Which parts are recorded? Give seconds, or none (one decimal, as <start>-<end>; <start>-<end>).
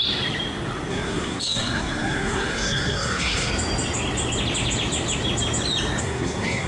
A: 0.0-0.9; 3.5-6.0